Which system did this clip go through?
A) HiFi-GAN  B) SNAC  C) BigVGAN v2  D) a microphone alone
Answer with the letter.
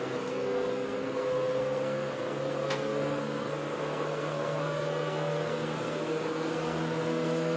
B